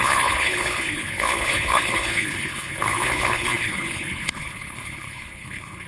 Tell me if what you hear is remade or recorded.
remade